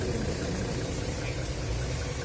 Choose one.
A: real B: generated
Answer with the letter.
A